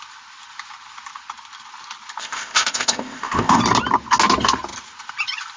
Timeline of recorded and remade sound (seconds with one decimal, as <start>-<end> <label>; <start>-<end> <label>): 0.0-2.2 recorded; 2.2-3.6 remade; 3.6-5.6 recorded